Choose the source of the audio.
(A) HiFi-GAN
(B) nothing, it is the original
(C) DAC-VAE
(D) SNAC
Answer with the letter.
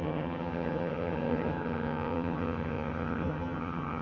A